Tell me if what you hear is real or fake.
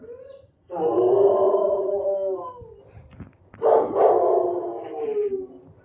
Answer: real